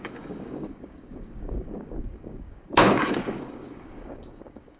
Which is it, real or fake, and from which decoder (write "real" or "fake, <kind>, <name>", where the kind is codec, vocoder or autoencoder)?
fake, codec, DAC